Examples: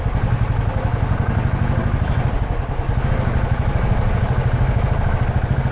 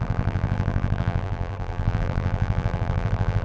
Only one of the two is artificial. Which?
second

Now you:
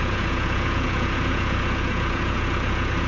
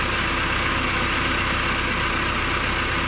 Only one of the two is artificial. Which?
first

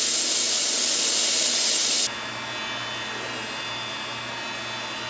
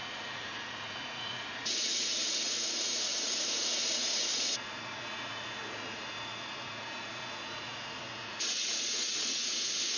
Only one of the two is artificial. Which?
second